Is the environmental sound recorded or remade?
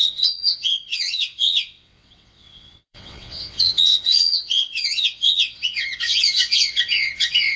remade